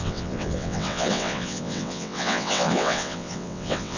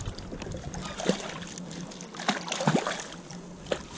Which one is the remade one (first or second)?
first